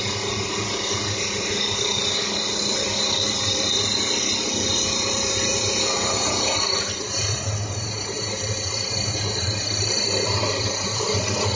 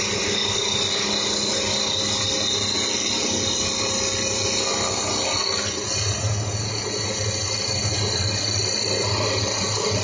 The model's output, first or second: first